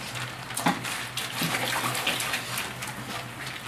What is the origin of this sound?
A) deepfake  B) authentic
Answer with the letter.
B